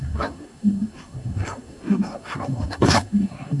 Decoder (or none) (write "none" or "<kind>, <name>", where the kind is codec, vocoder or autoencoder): codec, SNAC